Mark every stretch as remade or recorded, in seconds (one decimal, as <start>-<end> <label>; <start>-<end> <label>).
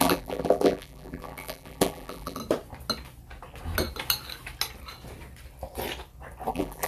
0.0-2.4 remade; 2.4-6.5 recorded; 6.5-6.9 remade